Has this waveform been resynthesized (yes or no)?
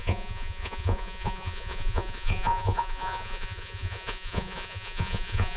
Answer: yes